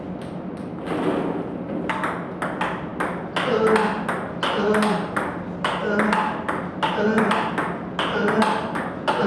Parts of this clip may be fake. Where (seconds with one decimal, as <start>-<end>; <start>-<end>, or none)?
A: none